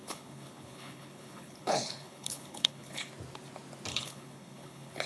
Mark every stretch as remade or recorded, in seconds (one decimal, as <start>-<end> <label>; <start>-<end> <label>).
0.0-3.1 remade; 3.1-3.9 recorded; 3.9-5.1 remade